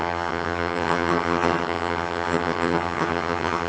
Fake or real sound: fake